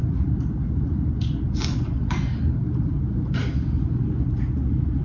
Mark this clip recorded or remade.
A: recorded